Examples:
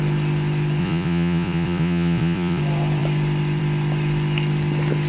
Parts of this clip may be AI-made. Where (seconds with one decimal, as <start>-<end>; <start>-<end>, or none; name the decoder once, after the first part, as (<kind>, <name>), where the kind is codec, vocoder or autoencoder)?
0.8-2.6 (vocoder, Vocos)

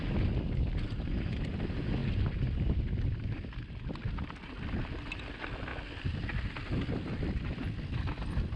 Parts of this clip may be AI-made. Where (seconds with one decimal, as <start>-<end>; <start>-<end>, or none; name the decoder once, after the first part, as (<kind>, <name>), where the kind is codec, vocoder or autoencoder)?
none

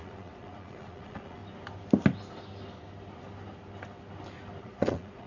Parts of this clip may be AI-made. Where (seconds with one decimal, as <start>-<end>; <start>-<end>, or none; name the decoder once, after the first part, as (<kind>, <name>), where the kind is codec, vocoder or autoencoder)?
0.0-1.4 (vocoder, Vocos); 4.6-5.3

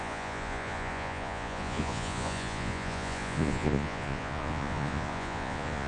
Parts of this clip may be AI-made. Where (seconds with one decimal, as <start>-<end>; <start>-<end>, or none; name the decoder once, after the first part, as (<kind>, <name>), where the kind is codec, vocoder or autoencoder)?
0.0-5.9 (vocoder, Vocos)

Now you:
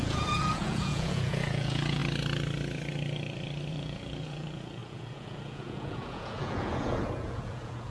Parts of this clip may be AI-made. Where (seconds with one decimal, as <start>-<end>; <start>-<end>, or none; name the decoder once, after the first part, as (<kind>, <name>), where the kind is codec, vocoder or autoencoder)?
0.0-2.0 (vocoder, Vocos); 3.7-7.9

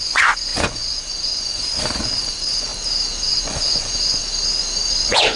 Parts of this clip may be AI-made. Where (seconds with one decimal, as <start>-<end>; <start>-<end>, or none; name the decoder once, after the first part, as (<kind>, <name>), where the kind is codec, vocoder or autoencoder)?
0.0-2.7 (vocoder, Vocos); 3.2-4.2; 4.9-5.4